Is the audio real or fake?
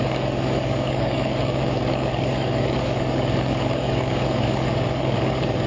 fake